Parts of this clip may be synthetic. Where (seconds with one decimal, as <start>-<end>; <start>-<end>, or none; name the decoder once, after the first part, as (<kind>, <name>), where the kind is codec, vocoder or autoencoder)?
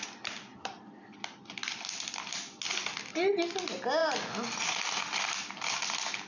0.5-2.6 (vocoder, BigVGAN v2)